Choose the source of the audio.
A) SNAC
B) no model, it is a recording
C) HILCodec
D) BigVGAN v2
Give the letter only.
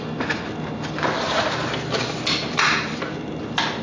B